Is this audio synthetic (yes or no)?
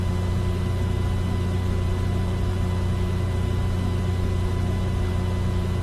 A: no